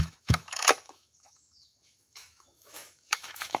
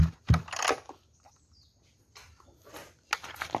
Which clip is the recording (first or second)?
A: second